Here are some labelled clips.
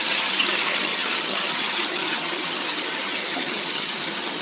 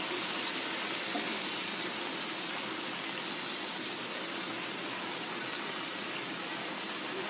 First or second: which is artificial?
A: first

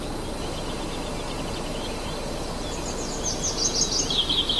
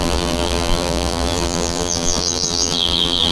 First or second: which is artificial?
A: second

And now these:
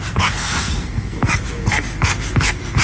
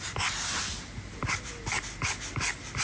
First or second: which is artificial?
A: first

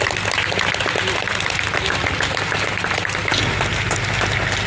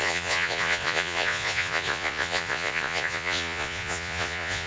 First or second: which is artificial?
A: second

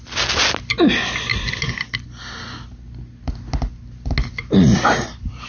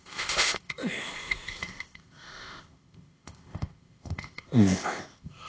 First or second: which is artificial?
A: second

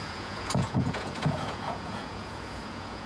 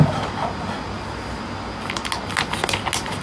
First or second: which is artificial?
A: first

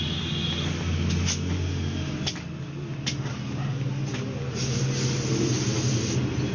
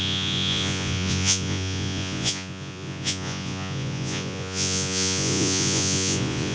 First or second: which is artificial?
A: second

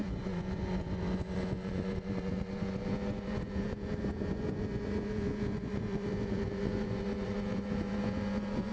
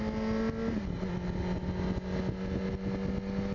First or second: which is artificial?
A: first